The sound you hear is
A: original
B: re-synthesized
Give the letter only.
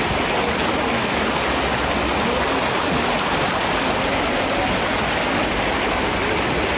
A